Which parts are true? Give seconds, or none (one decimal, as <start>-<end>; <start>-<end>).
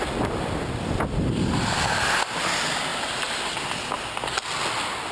0.0-5.1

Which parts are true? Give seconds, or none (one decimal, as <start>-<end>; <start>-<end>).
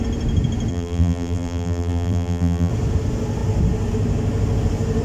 0.0-0.7; 2.7-5.0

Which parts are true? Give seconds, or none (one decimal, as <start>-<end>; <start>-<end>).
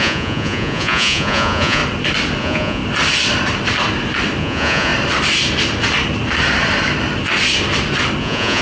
1.8-2.4; 2.8-4.4; 4.9-8.2